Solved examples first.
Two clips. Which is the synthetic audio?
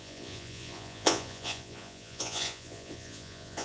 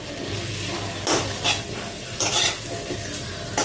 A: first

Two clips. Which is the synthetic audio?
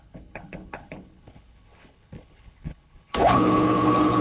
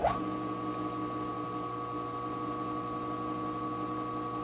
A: first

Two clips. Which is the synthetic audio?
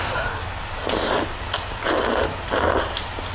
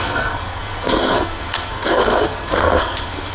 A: second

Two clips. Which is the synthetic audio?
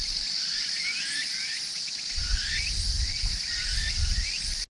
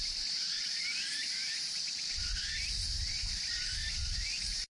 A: second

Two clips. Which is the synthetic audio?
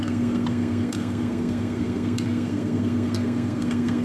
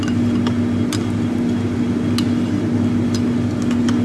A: first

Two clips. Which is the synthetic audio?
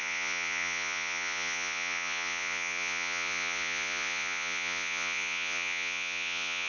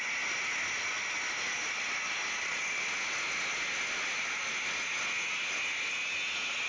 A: first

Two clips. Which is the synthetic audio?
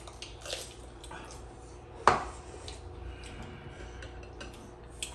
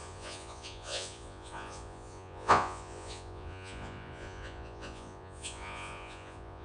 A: second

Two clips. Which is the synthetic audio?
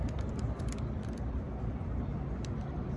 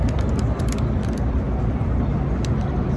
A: first